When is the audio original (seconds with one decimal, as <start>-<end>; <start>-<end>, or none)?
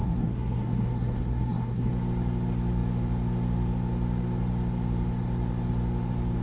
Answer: 1.9-6.4